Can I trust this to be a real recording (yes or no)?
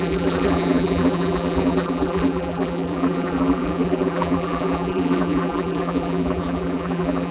no